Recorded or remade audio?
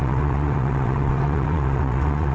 remade